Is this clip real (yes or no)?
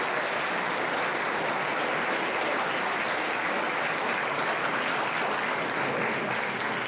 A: yes